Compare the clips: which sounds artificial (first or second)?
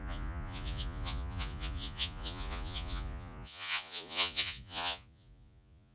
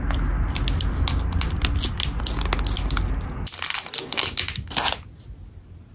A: first